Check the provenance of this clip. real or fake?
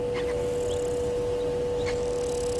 real